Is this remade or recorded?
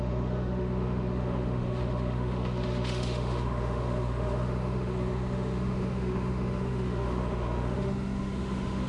remade